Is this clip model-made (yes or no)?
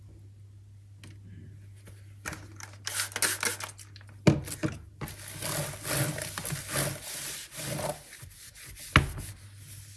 no